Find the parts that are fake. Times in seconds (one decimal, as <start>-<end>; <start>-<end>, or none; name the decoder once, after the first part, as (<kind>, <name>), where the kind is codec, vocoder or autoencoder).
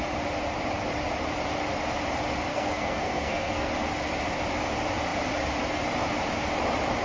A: 2.5-3.7 (codec, SNAC)